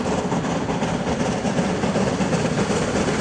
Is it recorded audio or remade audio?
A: recorded